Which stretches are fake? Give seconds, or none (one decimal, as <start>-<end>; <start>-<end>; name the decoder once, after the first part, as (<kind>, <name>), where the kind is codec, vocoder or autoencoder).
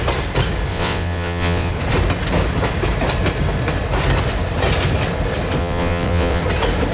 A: 0.7-1.7 (vocoder, WaveNeXt); 5.6-6.4